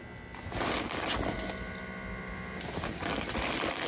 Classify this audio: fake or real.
real